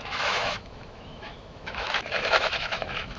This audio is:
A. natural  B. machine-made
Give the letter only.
B